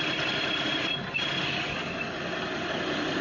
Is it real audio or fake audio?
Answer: real